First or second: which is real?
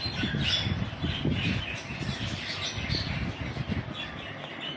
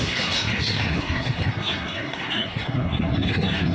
first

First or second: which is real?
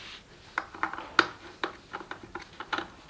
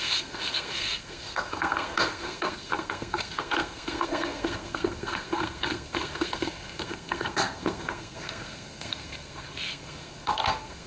first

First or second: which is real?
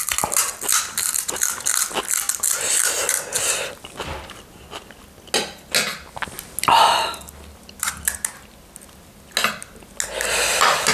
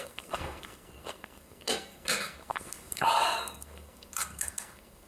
first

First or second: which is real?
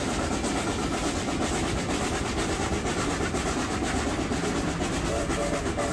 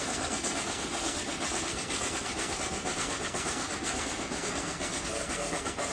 first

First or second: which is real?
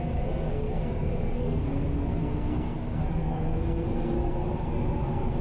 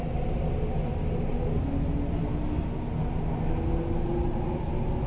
second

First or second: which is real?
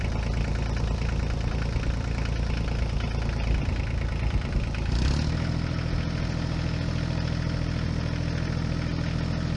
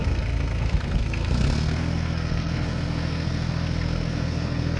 first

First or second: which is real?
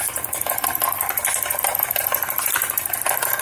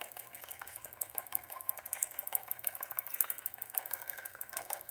first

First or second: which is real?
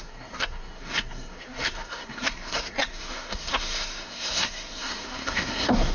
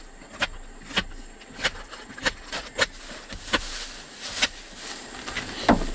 second